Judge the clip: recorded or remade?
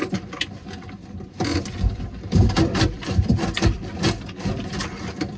remade